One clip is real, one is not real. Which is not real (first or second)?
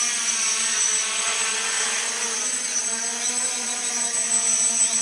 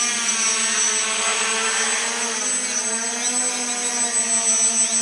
first